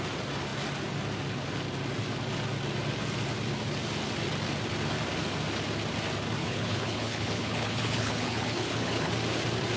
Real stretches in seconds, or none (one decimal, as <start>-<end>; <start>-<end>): 0.0-6.4; 9.1-9.8